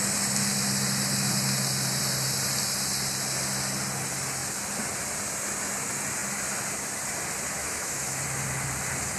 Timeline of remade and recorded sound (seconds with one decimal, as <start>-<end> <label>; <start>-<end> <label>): 0.0-7.6 recorded; 7.6-8.2 remade; 8.2-9.2 recorded